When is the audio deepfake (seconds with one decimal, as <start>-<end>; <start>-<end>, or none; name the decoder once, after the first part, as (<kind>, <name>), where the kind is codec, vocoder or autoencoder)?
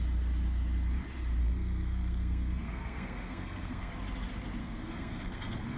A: 1.4-3.9 (codec, SNAC); 4.6-5.8